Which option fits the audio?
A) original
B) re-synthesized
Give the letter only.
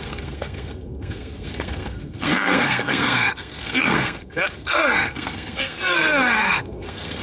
B